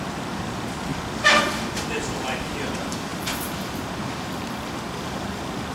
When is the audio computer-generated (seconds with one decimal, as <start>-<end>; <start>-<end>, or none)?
0.0-5.7